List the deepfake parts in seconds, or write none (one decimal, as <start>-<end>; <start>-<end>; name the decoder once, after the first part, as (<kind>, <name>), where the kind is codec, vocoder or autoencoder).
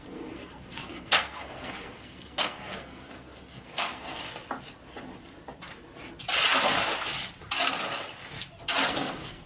0.0-4.2 (codec, SNAC); 8.9-9.5